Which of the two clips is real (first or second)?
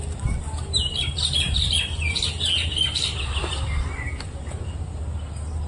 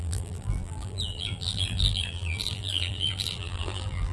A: first